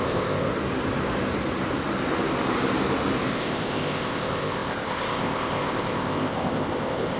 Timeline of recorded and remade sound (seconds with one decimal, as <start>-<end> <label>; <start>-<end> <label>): 0.0-0.5 remade; 0.5-3.3 recorded; 3.3-7.2 remade